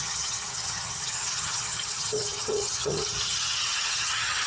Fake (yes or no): yes